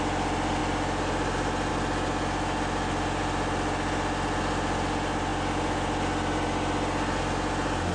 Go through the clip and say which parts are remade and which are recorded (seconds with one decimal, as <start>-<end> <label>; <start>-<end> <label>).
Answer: 0.0-7.9 recorded